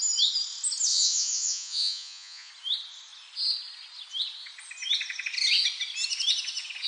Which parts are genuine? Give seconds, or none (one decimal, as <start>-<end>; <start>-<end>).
0.0-0.9; 2.5-6.9